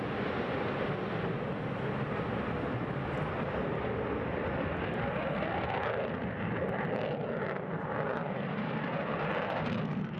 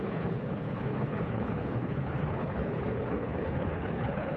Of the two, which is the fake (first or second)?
second